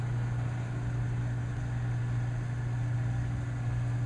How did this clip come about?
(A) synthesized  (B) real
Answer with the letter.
B